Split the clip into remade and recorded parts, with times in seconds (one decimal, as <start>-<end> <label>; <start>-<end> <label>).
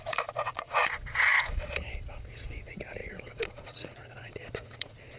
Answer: 0.0-5.2 remade